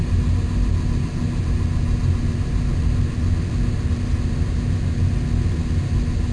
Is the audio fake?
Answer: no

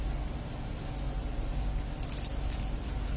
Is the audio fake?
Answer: no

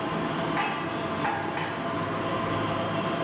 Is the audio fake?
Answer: no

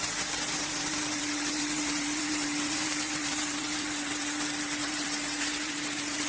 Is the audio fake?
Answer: yes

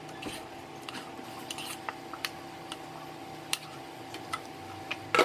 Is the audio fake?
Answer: no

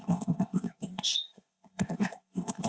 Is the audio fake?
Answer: yes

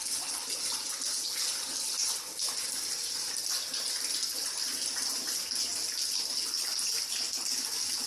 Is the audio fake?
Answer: no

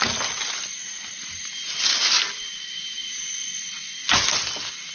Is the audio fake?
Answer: no